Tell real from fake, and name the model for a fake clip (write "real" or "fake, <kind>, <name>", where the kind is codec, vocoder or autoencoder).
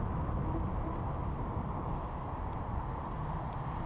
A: real